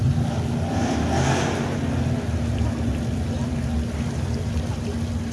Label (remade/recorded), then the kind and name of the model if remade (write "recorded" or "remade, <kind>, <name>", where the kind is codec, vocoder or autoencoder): recorded